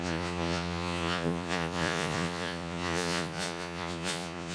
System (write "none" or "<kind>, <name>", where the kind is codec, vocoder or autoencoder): vocoder, Vocos